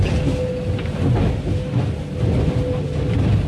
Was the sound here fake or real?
real